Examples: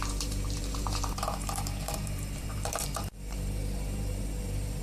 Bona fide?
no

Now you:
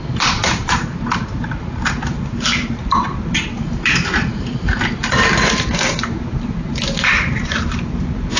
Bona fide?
no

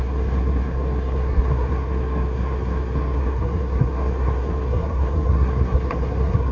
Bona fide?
no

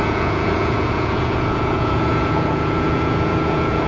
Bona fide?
no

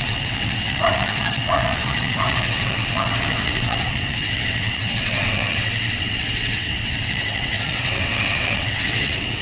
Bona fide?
no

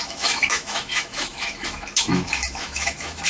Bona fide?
no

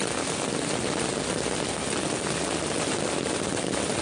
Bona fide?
yes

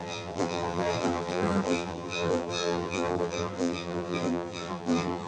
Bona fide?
no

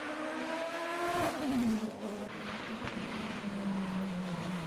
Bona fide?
yes